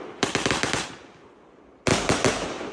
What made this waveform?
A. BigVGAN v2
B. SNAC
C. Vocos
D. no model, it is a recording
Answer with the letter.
D